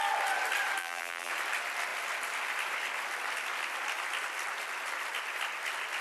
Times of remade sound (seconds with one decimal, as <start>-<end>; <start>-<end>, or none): 0.8-1.3